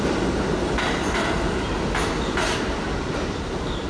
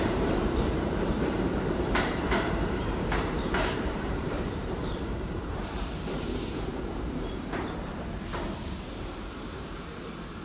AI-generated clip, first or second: second